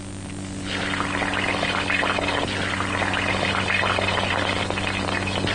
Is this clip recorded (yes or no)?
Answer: yes